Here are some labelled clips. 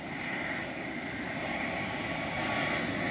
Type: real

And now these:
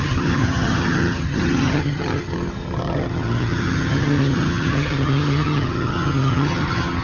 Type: fake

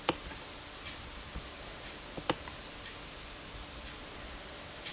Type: real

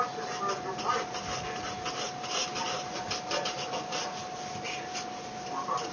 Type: real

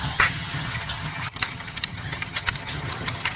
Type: fake